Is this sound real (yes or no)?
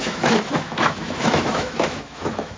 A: no